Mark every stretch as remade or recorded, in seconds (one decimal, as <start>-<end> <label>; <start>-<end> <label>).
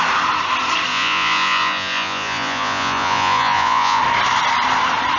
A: 0.0-0.9 recorded; 0.9-4.0 remade; 4.0-5.2 recorded